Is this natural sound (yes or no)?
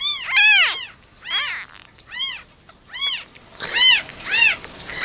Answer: yes